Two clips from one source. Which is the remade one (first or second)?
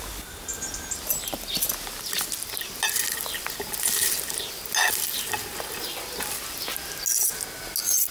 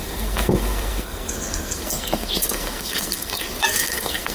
second